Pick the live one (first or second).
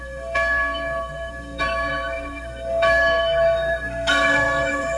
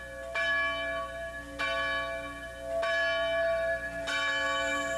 second